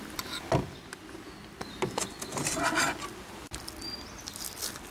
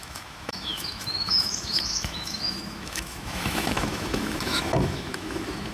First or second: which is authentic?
first